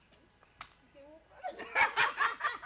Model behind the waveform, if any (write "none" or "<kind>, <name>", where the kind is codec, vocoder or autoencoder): none